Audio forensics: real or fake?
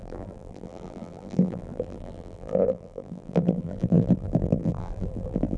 fake